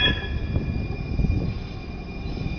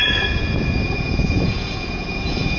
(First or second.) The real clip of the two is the first